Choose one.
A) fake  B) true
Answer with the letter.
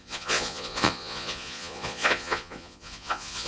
A